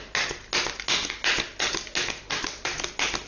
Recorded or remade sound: recorded